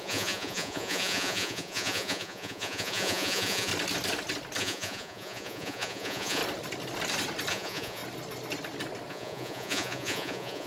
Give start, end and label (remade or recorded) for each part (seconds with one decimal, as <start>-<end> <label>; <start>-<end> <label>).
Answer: 0.0-3.7 remade; 3.7-4.6 recorded; 4.6-6.4 remade; 6.4-7.5 recorded; 7.5-8.0 remade; 8.0-9.1 recorded; 9.1-10.7 remade